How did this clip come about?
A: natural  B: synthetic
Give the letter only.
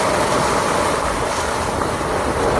A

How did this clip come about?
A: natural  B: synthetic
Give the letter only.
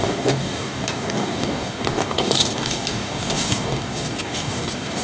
B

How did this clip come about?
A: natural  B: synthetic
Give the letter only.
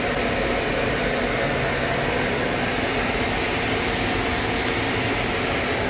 A